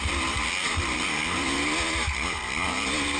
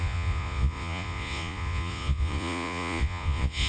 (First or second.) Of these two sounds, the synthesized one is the second